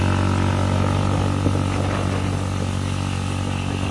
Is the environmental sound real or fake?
real